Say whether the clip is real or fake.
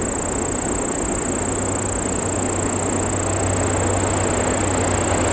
real